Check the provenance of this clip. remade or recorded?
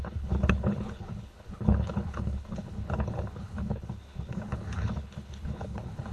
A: remade